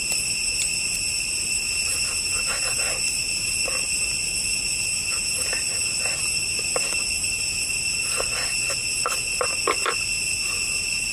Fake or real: real